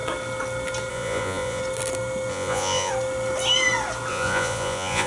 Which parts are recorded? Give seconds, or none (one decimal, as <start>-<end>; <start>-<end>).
0.0-0.9; 1.6-2.3; 2.9-4.1